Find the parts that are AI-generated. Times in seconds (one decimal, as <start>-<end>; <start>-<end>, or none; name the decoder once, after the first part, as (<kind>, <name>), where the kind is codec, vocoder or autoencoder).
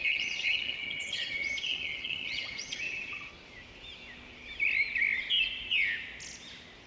0.0-3.3 (vocoder, HiFi-GAN)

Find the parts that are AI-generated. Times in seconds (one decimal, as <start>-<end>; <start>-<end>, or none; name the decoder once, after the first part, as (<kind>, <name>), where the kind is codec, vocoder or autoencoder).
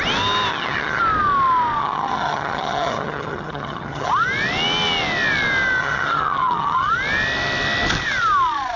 0.5-1.0 (vocoder, HiFi-GAN); 1.8-4.1; 5.8-6.9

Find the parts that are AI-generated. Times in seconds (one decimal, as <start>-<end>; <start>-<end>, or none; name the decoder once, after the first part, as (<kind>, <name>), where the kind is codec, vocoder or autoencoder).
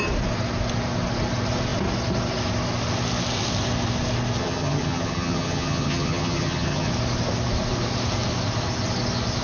4.4-6.9 (vocoder, HiFi-GAN)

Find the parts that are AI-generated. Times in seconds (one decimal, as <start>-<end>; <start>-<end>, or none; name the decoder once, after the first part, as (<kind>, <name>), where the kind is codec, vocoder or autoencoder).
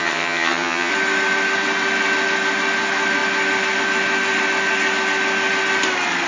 0.0-0.9 (vocoder, HiFi-GAN)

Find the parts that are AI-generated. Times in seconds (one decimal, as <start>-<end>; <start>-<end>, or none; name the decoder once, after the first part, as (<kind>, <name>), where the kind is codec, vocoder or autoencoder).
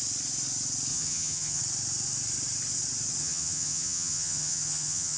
0.9-1.6 (vocoder, HiFi-GAN); 3.2-5.2